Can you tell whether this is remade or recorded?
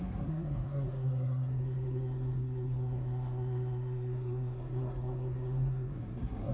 remade